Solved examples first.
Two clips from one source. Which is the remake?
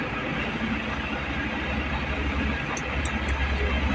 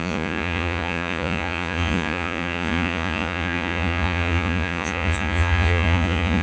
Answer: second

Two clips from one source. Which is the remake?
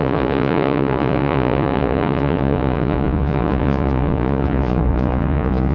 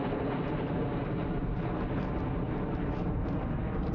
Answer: first